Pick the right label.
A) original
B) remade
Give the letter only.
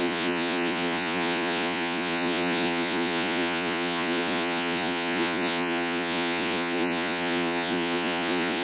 B